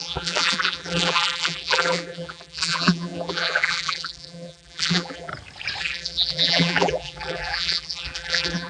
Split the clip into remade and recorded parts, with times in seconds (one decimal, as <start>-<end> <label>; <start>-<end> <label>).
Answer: 0.0-5.3 remade; 5.3-5.8 recorded; 5.8-8.7 remade